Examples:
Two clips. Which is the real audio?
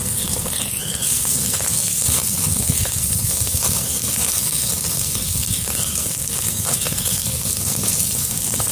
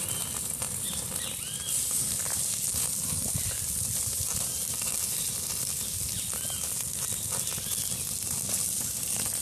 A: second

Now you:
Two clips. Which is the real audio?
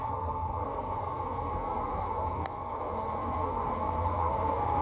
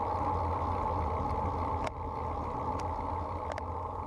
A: second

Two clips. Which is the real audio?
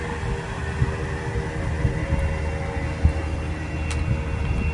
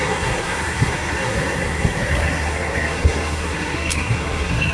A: first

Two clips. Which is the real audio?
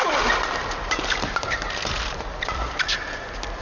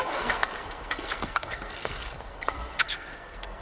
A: first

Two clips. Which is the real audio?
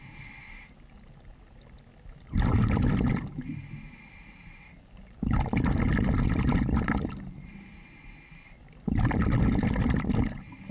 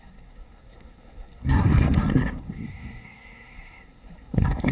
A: first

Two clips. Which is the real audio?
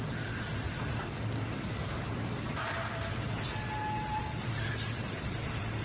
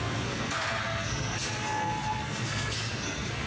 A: first